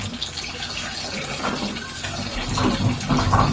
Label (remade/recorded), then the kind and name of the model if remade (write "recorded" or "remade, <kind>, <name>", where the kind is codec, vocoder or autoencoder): recorded